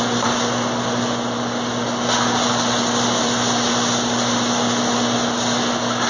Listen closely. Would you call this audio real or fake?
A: real